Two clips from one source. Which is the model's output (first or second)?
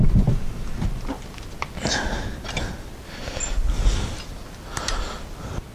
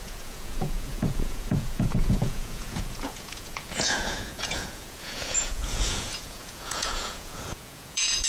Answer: second